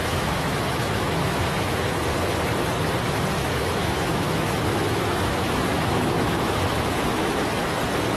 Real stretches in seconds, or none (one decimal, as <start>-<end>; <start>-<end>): 2.3-3.4; 7.4-8.2